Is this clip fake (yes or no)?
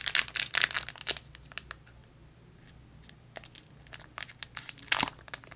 no